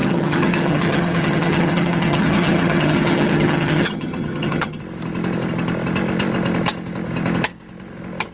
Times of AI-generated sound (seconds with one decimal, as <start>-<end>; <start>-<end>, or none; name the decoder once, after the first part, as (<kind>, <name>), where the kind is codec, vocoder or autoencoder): 0.0-4.8 (vocoder, HiFi-GAN)